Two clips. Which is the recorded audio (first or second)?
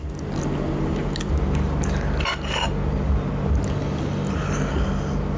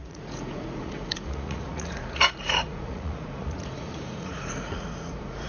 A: first